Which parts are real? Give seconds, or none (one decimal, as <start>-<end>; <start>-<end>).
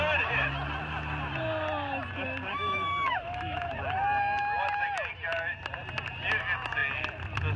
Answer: 0.0-2.5; 3.7-7.6